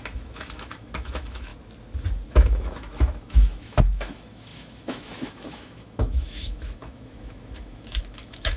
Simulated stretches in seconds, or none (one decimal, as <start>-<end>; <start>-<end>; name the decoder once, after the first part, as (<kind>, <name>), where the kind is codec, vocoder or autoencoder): 0.0-1.5 (autoencoder, DAC-VAE); 2.3-8.6